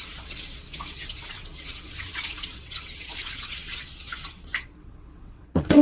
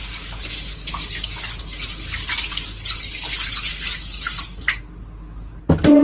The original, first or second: second